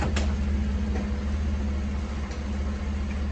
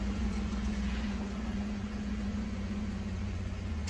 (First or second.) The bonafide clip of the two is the first